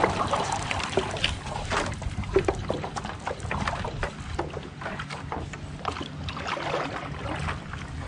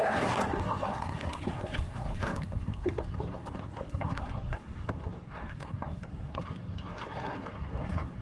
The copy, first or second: second